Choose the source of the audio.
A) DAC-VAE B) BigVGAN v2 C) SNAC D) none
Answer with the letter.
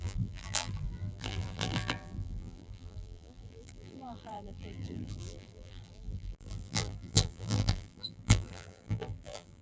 B